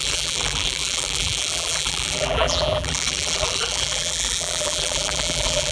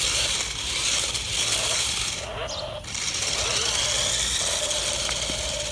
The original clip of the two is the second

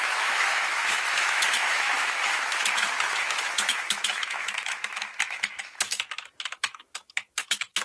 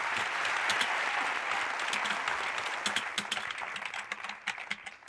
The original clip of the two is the second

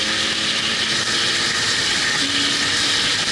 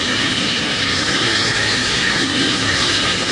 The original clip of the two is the first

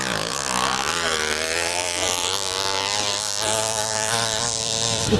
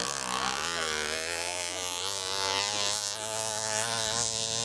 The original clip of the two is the second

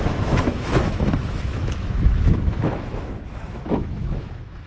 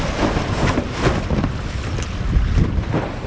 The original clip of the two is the second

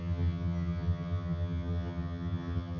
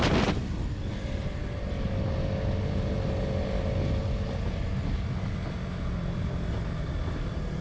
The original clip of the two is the second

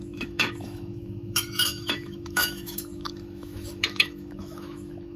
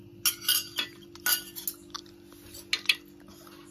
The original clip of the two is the second